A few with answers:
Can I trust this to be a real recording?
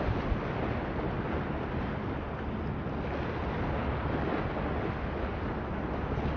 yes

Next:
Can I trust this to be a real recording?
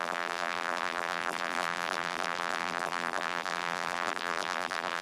no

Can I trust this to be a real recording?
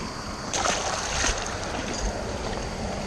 no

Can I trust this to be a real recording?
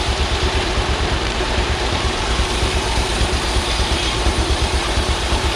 no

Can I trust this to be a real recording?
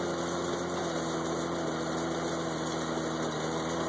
yes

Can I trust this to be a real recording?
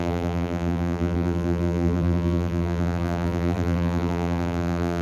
no